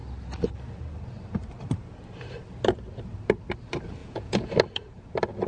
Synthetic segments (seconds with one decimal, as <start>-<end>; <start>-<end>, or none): 4.0-4.5

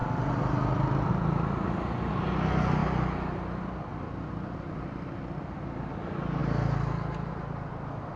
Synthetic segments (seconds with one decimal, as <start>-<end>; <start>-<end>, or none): none

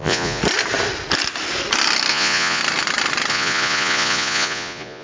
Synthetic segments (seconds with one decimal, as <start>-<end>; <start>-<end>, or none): 0.0-0.4; 2.1-2.6; 3.3-5.0

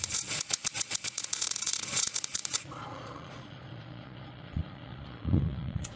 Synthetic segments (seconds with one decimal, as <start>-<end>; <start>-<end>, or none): 0.0-6.0